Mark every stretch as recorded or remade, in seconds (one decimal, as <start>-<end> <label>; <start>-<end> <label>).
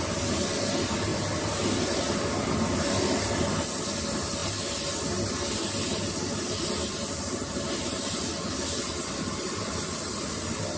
0.0-10.8 recorded